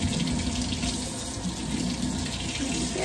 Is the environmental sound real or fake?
real